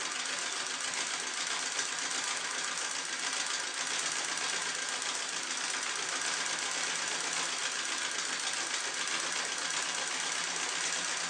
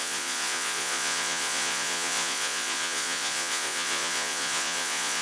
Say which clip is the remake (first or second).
second